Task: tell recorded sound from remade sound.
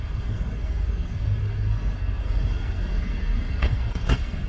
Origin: remade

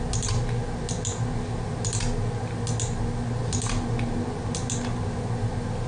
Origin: recorded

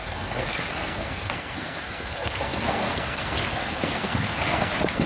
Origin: remade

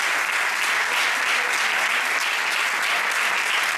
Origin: recorded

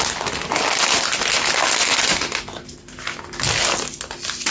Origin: recorded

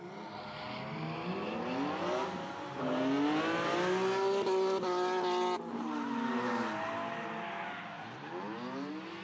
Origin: recorded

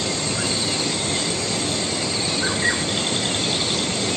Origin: recorded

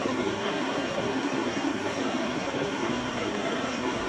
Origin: remade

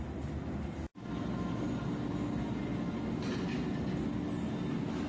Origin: recorded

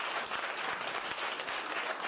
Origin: recorded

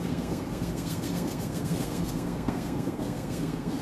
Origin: remade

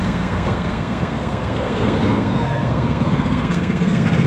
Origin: remade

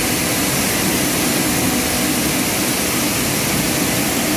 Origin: recorded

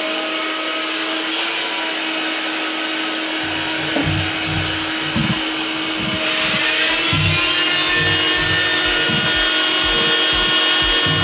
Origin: recorded